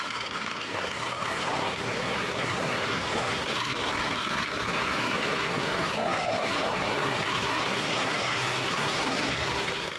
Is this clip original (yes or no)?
no